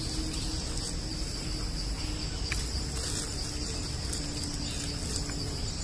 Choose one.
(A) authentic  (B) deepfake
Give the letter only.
A